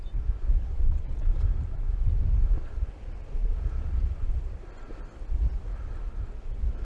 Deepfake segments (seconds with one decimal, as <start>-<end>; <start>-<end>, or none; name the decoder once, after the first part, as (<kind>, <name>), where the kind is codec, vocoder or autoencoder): 0.7-1.5 (vocoder, Vocos); 3.4-4.3